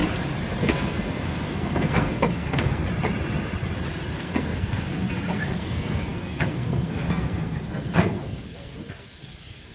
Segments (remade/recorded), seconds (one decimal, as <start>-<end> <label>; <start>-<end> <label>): 0.0-0.6 recorded; 0.6-2.8 remade; 2.8-4.1 recorded; 4.1-9.7 remade